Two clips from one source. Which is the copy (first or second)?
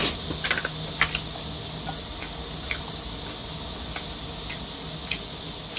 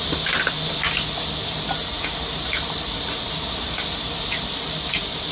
second